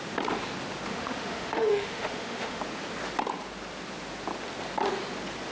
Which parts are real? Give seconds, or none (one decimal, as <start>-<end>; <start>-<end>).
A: 0.0-0.9; 2.6-5.5